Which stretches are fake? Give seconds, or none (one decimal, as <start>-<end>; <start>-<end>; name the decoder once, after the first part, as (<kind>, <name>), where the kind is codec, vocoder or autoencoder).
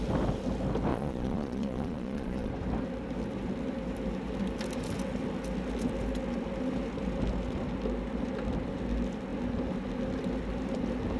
0.9-2.5 (vocoder, Vocos)